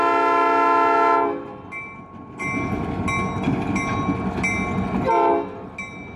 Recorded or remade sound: recorded